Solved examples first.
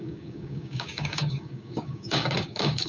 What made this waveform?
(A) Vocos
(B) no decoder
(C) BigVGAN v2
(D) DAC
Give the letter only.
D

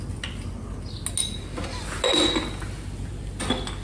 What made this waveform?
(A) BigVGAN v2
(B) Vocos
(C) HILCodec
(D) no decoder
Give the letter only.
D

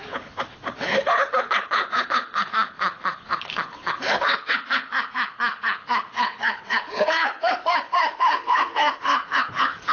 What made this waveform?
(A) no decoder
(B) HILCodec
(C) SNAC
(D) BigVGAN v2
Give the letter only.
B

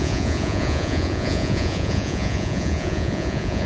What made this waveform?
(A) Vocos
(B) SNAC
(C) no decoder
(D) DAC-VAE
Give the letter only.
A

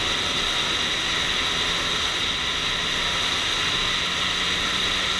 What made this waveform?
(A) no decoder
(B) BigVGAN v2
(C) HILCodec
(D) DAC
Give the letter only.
A